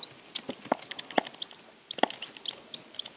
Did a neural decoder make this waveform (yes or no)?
no